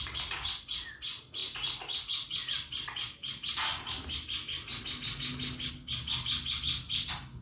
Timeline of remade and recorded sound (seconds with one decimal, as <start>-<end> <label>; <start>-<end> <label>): 0.0-7.4 recorded